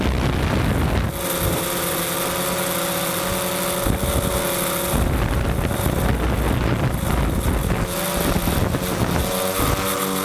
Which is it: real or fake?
real